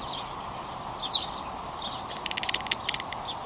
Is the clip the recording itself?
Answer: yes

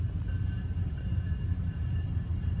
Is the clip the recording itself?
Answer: yes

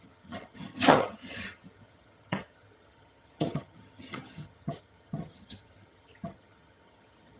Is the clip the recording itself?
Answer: no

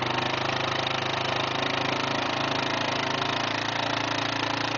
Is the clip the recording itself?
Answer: yes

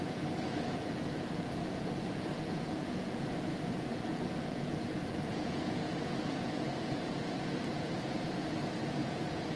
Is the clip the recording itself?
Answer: no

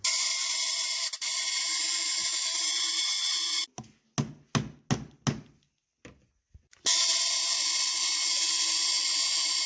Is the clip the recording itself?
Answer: yes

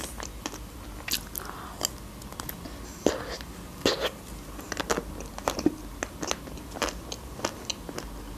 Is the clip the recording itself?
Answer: yes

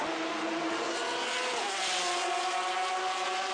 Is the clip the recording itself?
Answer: yes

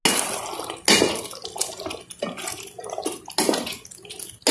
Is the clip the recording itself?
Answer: yes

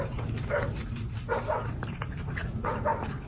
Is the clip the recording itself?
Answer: yes